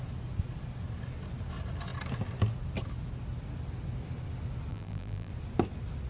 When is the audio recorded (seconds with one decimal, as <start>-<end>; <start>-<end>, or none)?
0.0-4.7; 5.3-6.1